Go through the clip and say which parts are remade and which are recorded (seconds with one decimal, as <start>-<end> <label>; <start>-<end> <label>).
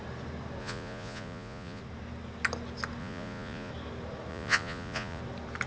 0.0-0.6 recorded; 0.6-1.8 remade; 1.8-3.0 recorded; 3.0-3.7 remade; 3.7-4.3 recorded; 4.3-5.2 remade; 5.2-5.7 recorded